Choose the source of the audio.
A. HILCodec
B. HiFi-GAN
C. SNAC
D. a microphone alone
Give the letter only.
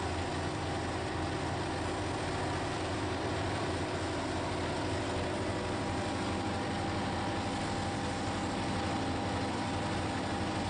D